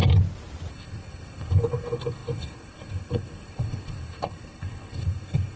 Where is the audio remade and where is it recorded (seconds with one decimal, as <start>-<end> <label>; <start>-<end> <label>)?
0.0-0.7 recorded; 0.7-5.6 remade